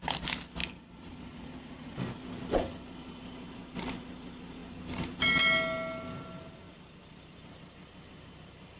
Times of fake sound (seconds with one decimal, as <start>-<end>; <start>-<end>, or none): none